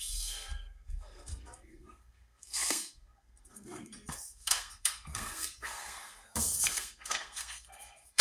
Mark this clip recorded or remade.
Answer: remade